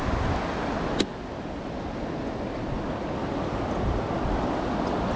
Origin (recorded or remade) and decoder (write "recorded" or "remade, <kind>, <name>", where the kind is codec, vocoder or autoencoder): recorded